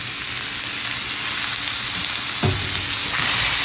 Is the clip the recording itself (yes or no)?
yes